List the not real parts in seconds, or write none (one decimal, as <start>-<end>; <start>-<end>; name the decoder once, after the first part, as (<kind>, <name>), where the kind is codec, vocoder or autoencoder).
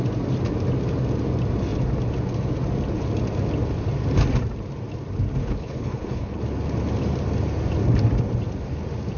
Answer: 5.4-6.4 (codec, HILCodec)